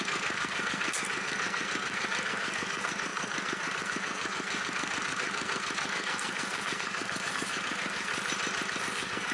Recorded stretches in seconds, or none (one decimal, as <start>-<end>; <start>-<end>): 8.1-8.8